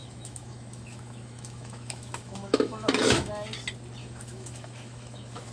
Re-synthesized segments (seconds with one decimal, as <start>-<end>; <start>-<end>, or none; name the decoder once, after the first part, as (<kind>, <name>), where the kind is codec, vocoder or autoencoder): 0.0-3.3 (autoencoder, DAC-VAE); 4.0-5.5